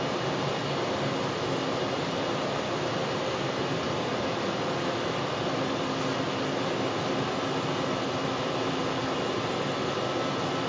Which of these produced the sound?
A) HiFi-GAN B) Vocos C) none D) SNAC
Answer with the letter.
C